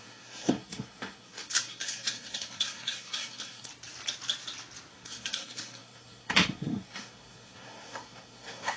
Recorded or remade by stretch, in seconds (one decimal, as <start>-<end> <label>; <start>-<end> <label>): 0.0-3.7 remade; 3.7-4.9 recorded; 4.9-8.8 remade